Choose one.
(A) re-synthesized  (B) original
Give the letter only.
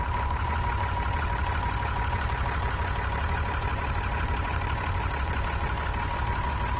A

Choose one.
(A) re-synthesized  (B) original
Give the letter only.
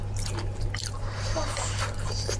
B